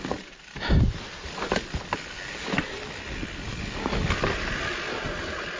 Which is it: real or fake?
real